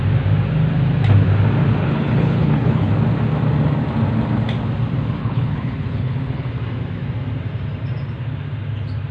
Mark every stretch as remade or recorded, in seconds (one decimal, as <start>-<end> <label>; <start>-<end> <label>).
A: 0.0-1.8 recorded; 1.8-2.9 remade; 2.9-5.2 recorded; 5.2-6.5 remade; 6.5-9.1 recorded

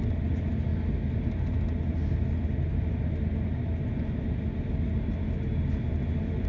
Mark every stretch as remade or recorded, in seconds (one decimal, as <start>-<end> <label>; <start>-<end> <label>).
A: 0.0-6.5 recorded

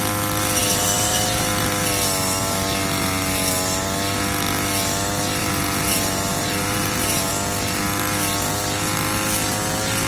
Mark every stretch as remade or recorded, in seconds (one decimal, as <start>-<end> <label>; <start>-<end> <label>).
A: 0.0-0.6 recorded; 0.6-1.4 remade; 1.4-5.4 recorded; 5.4-7.3 remade; 7.3-10.1 recorded

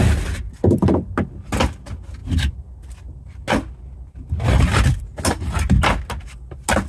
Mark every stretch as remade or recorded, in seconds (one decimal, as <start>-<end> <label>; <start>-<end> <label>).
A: 0.0-6.9 recorded

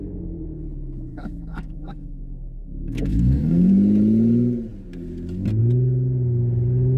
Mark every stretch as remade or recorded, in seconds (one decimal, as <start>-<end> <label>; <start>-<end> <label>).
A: 0.0-1.1 recorded; 1.1-3.7 remade; 3.7-7.0 recorded

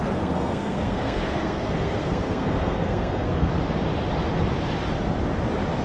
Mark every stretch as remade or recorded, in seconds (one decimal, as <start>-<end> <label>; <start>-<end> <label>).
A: 0.0-3.5 remade; 3.5-5.8 recorded

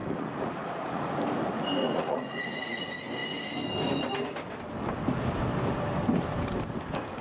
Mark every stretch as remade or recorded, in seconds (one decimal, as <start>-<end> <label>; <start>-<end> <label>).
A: 0.0-1.1 remade; 1.1-1.8 recorded; 1.8-2.8 remade; 2.8-7.2 recorded